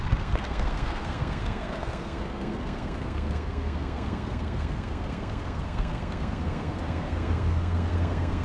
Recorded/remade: remade